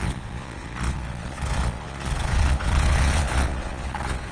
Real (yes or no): no